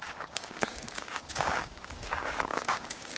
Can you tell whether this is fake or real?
fake